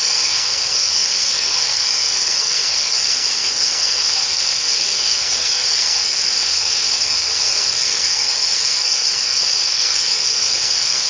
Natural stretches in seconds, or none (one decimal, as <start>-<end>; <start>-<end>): none